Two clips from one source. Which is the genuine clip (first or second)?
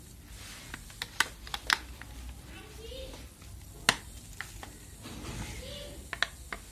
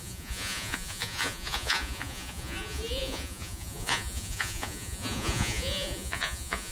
first